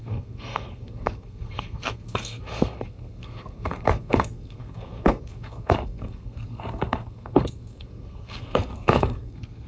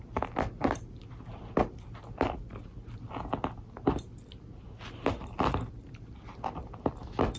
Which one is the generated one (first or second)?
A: first